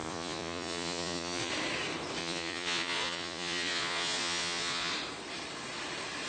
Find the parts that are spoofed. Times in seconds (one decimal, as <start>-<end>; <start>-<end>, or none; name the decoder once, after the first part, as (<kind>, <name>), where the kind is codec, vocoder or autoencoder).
0.0-1.5 (vocoder, Vocos); 2.2-4.9